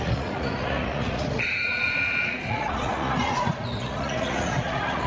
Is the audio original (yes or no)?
no